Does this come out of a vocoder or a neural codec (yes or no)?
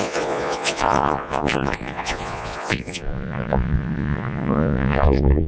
yes